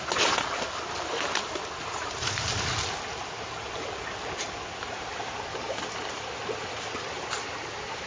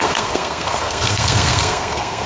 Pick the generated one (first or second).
second